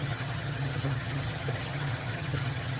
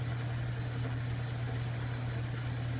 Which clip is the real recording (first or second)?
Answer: second